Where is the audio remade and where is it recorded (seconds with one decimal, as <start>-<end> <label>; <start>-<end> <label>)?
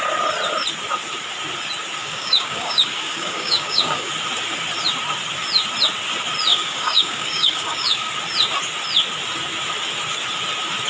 0.0-2.0 recorded; 2.0-4.1 remade; 4.1-6.5 recorded; 6.5-8.1 remade; 8.1-10.9 recorded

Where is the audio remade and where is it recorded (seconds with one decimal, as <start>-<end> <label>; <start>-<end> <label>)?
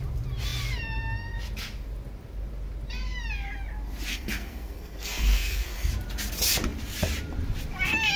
0.0-4.1 recorded; 4.1-5.9 remade; 5.9-8.2 recorded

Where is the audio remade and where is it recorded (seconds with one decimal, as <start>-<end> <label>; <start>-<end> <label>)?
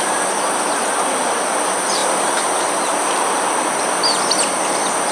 0.0-5.1 recorded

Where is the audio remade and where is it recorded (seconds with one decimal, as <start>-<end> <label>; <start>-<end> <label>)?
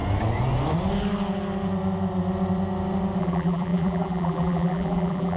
0.0-3.2 recorded; 3.2-5.4 remade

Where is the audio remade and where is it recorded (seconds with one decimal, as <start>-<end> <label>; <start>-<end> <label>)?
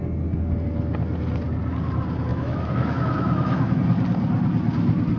0.0-2.3 recorded; 2.3-3.8 remade; 3.8-5.2 recorded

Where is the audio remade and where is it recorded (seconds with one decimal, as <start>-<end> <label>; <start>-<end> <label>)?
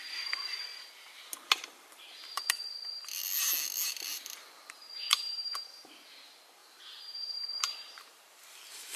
0.0-4.1 recorded; 4.1-5.6 remade; 5.6-6.6 recorded; 6.6-9.0 remade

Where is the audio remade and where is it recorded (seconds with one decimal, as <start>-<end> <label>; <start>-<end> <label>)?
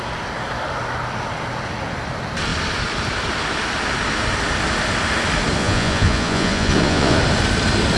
0.0-5.6 recorded; 5.6-7.2 remade; 7.2-8.0 recorded